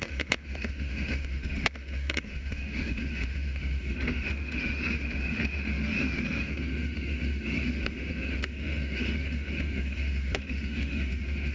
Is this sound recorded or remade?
remade